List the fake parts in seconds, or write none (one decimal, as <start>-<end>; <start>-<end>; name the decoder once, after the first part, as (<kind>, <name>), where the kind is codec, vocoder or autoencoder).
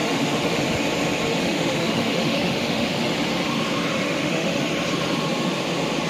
0.0-0.6 (autoencoder, DAC-VAE); 1.4-2.9; 3.9-4.6